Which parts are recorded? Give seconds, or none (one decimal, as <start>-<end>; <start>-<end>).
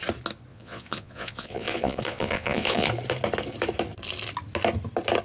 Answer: 0.0-0.5; 2.9-5.2